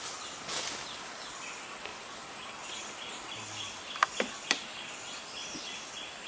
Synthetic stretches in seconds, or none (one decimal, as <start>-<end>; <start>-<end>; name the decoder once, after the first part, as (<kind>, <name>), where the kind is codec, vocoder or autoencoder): none